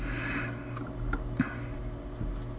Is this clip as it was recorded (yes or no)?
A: yes